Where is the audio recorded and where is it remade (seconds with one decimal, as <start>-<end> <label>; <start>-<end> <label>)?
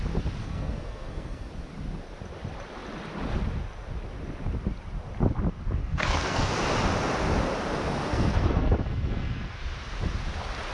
0.0-0.4 recorded; 0.4-1.5 remade; 1.5-5.8 recorded; 5.8-6.5 remade; 6.5-8.1 recorded; 8.1-9.6 remade; 9.6-10.7 recorded